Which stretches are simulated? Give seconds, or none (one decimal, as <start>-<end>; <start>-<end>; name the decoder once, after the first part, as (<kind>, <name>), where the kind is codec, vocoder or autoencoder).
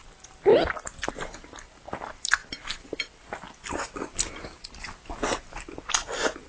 0.5-1.1 (vocoder, BigVGAN v2); 2.4-4.9